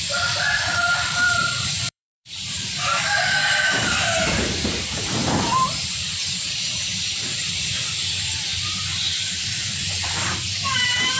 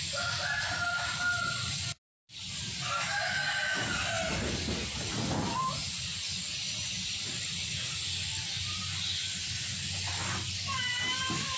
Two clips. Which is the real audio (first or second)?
second